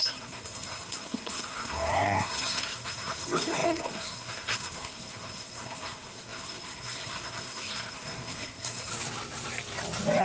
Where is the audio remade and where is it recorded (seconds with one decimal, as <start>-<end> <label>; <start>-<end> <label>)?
0.0-8.9 remade; 8.9-10.2 recorded